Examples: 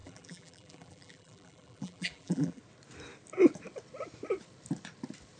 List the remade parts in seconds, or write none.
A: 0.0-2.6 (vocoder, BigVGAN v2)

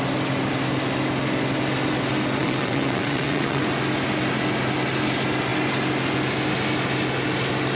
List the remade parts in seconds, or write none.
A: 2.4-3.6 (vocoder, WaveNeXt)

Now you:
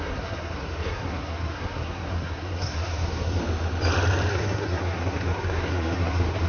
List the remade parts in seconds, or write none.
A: 0.0-3.4 (codec, SNAC); 4.3-6.5